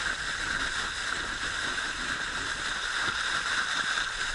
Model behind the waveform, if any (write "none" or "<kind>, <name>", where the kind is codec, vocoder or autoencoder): none